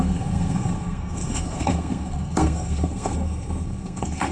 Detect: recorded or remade remade